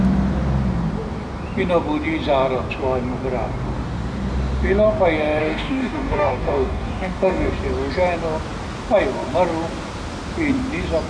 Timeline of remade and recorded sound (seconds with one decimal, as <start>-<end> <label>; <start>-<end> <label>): 0.0-5.4 recorded; 5.4-7.5 remade; 7.5-11.1 recorded